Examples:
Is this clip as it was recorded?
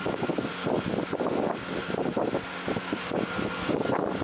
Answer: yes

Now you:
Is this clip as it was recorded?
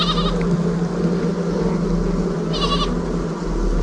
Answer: yes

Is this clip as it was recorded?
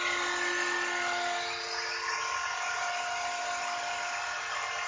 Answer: yes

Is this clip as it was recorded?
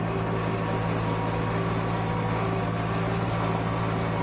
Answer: yes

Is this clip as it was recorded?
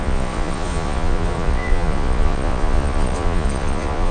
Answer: no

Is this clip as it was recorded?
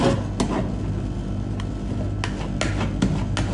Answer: yes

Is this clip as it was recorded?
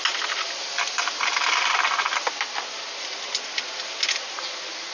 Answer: yes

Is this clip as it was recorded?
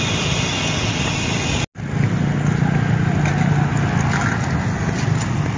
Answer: yes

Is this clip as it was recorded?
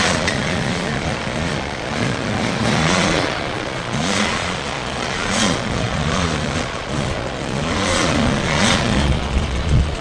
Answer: no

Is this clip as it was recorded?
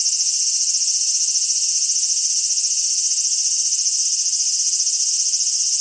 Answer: yes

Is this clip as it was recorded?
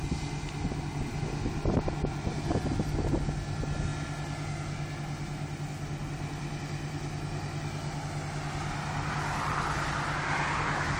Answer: yes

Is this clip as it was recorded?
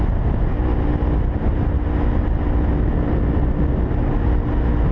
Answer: yes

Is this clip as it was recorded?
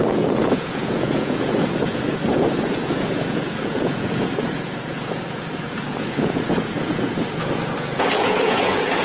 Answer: no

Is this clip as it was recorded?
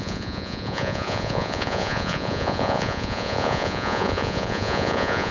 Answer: no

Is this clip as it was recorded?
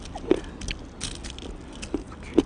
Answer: yes